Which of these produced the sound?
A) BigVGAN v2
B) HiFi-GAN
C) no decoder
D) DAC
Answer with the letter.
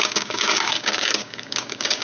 D